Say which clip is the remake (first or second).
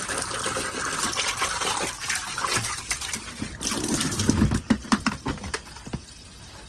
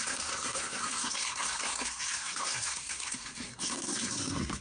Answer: second